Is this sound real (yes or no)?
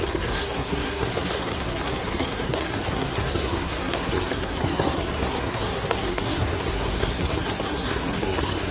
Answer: no